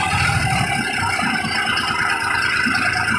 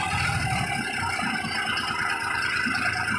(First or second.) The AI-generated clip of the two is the first